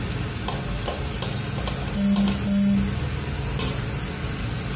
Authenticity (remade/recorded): recorded